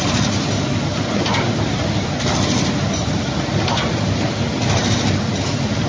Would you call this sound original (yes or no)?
yes